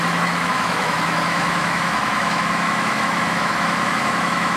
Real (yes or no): no